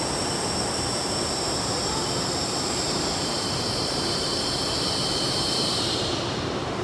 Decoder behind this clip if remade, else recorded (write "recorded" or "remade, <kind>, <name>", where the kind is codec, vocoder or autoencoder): remade, vocoder, BigVGAN v2